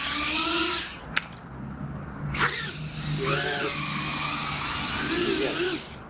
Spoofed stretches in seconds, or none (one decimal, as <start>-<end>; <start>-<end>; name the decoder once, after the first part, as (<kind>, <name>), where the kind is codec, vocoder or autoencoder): none